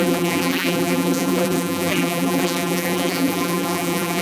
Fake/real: fake